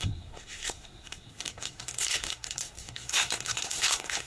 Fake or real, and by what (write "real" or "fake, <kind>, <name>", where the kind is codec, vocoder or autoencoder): fake, codec, SNAC